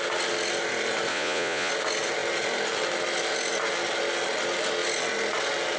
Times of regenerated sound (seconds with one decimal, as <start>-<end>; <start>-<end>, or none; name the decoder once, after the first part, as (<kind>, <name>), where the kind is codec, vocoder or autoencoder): 1.1-1.7 (vocoder, Vocos)